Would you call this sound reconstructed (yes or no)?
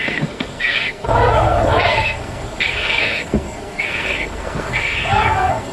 yes